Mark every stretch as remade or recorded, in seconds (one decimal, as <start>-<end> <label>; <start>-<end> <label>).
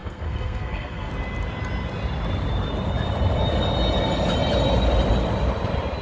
0.0-1.1 remade; 1.1-6.0 recorded